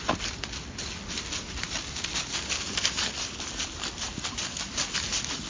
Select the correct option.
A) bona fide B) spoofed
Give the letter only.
A